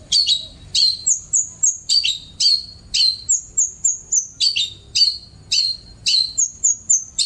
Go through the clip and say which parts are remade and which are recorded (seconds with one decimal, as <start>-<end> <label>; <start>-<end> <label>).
0.0-2.3 remade; 2.3-6.5 recorded; 6.5-7.3 remade